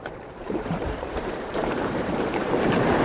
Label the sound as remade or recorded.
remade